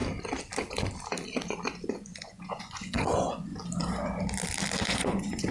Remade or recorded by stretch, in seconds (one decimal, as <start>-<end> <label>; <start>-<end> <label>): 0.0-1.9 recorded; 1.9-3.5 remade; 3.5-4.8 recorded; 4.8-5.5 remade